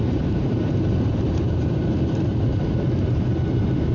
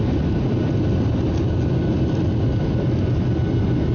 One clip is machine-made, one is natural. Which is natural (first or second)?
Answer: second